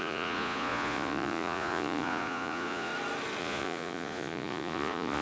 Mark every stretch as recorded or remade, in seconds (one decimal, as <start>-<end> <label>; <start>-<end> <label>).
0.0-2.9 remade; 2.9-3.4 recorded; 3.4-5.2 remade